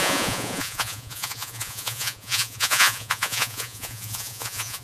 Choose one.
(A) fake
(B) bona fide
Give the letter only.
A